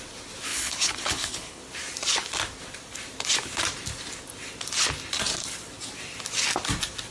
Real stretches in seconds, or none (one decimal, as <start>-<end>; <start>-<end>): 0.0-0.5; 1.6-7.1